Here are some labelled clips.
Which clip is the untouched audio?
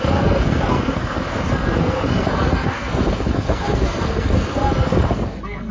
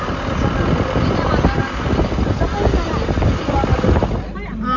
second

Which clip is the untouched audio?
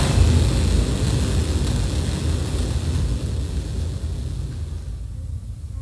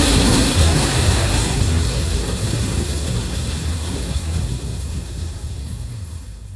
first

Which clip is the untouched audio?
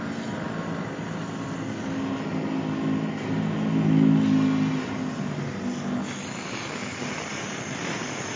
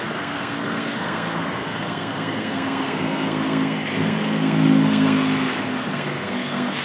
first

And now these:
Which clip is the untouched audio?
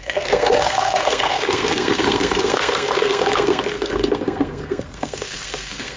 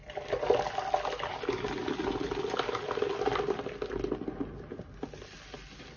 second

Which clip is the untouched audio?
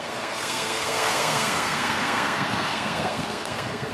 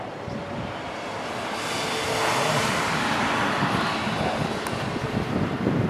second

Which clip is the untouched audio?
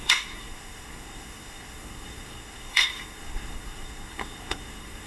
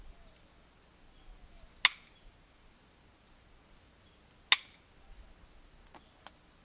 second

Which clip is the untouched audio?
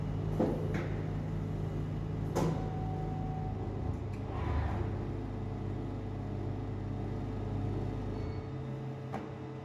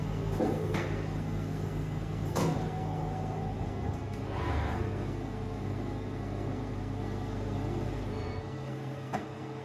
first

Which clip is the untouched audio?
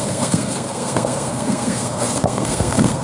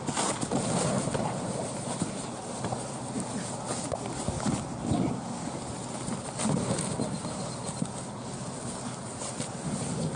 second